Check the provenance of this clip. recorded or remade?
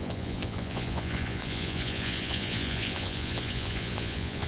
remade